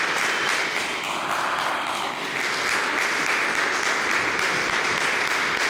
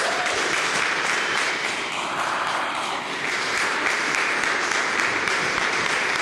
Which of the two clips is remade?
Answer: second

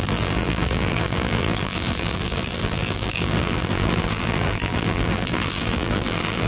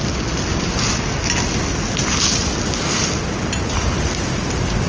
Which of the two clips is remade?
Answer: first